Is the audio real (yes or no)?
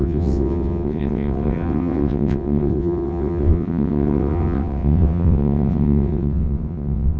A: no